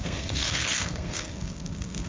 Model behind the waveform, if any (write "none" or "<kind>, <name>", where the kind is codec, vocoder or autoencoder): codec, SNAC